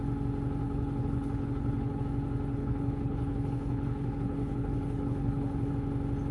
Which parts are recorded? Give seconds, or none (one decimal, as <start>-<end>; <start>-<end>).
0.0-0.6; 2.0-2.5; 5.7-6.3